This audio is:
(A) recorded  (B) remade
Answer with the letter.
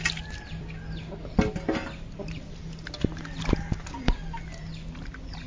A